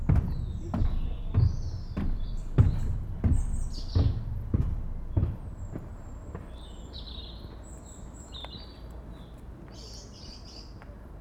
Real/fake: fake